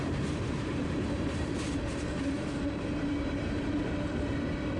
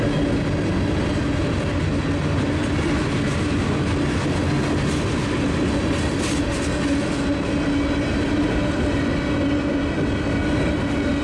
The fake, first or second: first